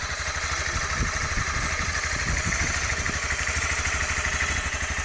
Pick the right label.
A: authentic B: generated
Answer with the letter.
A